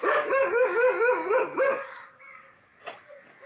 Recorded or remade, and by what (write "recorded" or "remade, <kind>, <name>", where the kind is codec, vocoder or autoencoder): remade, codec, DAC